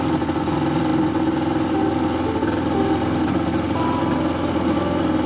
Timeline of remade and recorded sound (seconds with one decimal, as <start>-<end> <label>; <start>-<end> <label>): 0.0-5.3 recorded